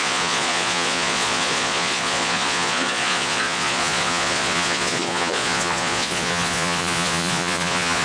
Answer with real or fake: fake